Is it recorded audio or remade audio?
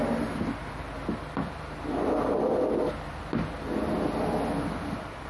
recorded